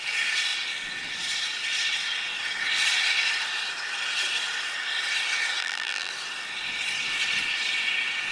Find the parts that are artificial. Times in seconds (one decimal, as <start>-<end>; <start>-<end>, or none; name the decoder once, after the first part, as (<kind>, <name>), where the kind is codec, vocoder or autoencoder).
5.6-6.1 (vocoder, BigVGAN v2)